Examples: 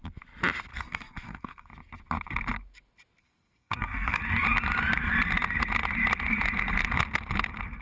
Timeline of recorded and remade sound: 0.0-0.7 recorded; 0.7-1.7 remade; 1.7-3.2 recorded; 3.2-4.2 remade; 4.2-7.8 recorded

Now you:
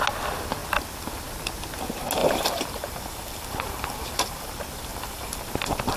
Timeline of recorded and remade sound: 0.0-2.2 recorded; 2.2-4.5 remade; 4.5-4.9 recorded; 4.9-5.4 remade; 5.4-6.0 recorded

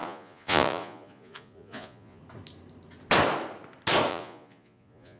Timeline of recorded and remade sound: 0.0-2.2 remade; 2.2-4.1 recorded; 4.1-5.2 remade

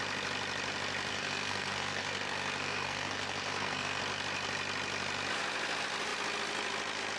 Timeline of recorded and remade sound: 0.0-1.1 recorded; 1.1-4.0 remade; 4.0-7.2 recorded